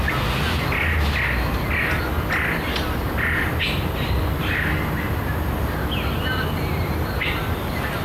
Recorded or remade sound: recorded